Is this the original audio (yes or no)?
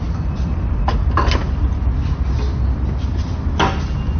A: yes